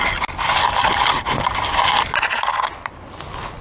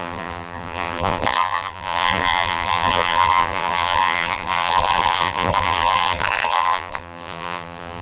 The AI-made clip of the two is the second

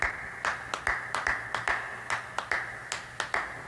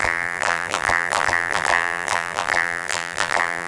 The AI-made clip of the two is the second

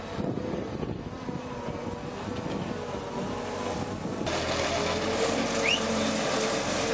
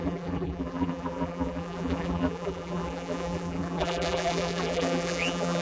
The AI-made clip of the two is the second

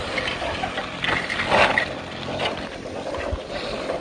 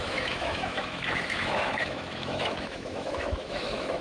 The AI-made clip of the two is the second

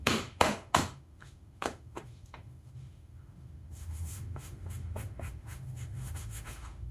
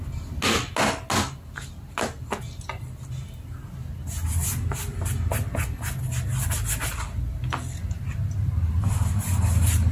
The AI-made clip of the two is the first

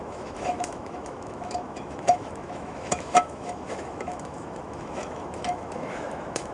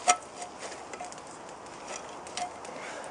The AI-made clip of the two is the first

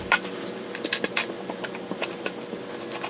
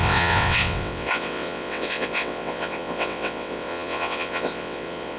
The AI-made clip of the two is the second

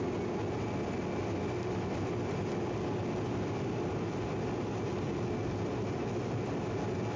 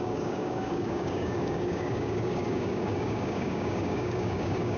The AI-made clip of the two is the second